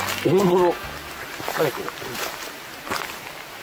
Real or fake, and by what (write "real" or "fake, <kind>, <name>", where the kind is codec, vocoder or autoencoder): real